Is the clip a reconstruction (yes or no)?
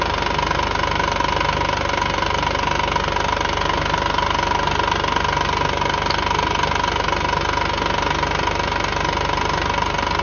no